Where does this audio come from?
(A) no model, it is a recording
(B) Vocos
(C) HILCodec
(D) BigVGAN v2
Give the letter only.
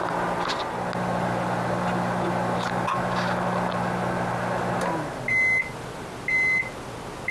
A